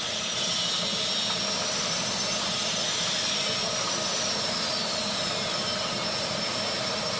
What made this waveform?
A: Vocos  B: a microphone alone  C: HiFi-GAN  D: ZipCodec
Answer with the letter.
B